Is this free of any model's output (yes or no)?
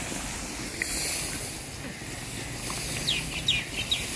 yes